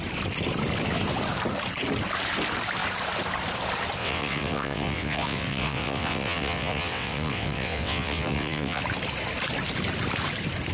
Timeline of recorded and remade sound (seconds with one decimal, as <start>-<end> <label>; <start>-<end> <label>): 0.0-4.0 recorded; 4.0-8.8 remade; 8.8-10.7 recorded